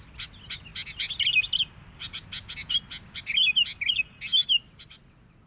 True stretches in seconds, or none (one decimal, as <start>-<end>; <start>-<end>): 0.0-5.5